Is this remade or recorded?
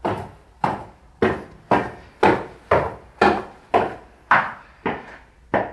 recorded